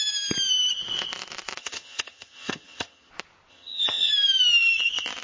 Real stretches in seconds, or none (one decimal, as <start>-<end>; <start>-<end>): 0.0-1.6; 3.1-3.5; 4.1-5.2